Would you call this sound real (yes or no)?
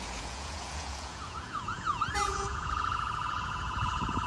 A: no